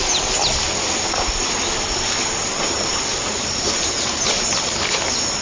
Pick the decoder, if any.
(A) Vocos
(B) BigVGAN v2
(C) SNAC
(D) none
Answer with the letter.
D